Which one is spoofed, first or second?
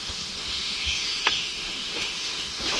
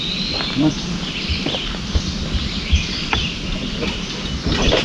first